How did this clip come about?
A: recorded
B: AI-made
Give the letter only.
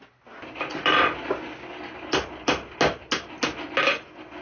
A